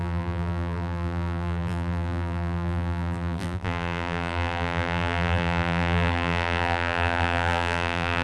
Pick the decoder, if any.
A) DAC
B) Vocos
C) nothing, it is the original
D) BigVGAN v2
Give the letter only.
D